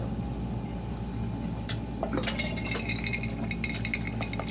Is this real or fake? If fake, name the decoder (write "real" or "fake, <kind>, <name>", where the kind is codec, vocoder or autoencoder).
real